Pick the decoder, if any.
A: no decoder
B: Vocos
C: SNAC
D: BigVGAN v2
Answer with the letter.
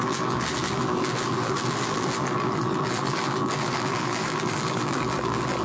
D